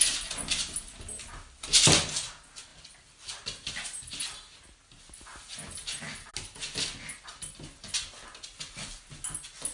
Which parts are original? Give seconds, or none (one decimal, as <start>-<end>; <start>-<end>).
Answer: 0.0-9.7